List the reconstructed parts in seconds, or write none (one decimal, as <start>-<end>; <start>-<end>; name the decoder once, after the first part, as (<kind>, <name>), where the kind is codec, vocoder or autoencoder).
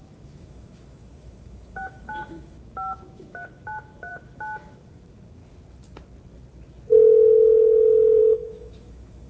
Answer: 0.0-5.4 (autoencoder, DAC-VAE); 8.2-9.3